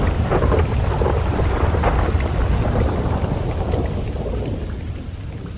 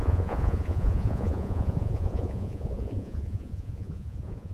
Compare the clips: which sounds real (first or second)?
first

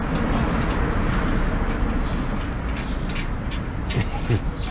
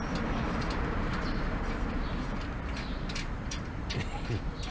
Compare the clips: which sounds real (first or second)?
first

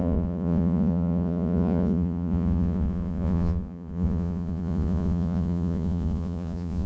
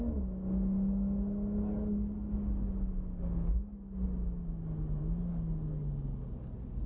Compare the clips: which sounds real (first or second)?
second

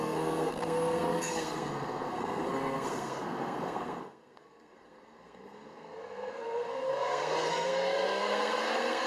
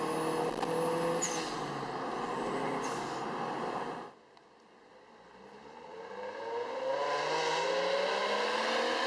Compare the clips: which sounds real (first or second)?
second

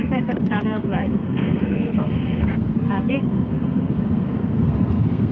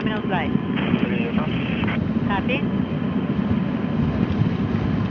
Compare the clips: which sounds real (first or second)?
second